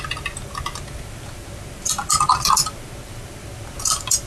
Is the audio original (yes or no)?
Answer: yes